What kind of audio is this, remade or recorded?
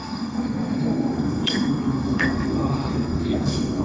remade